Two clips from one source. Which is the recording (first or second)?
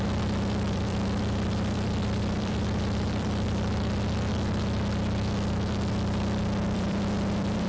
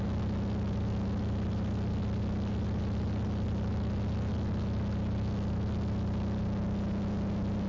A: second